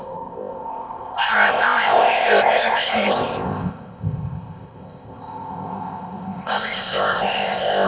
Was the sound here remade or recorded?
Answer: remade